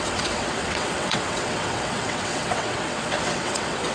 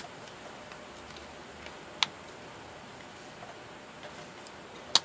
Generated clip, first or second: first